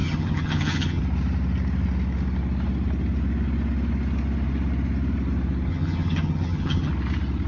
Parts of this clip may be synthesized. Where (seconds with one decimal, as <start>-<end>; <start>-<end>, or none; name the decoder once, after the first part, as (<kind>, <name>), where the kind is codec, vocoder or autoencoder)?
0.0-1.0 (vocoder, HiFi-GAN); 5.7-6.9

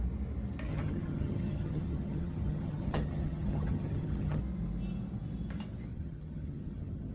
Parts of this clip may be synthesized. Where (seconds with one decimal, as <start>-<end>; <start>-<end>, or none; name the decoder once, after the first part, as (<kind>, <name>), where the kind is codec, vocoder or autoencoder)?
0.7-4.4 (vocoder, HiFi-GAN); 5.9-7.1

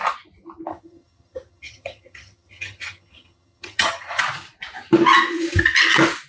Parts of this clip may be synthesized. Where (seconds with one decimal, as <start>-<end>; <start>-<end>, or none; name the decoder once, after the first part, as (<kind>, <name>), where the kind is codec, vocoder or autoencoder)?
0.7-4.2 (vocoder, HiFi-GAN)